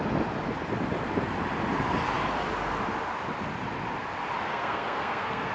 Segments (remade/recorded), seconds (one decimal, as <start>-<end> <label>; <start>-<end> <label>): 0.0-4.5 recorded; 4.5-5.5 remade